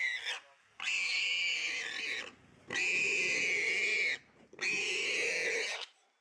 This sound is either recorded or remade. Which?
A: recorded